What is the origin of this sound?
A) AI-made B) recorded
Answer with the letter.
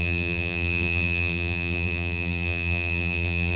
A